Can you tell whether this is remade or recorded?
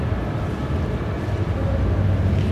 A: recorded